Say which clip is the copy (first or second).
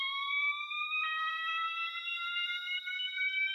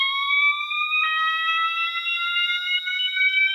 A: first